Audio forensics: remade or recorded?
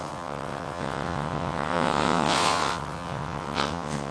remade